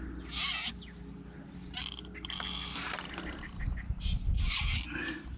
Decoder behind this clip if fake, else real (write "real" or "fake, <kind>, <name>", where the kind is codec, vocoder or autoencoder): real